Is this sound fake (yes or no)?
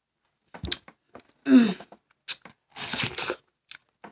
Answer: no